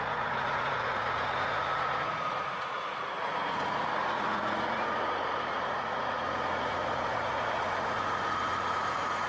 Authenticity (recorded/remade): remade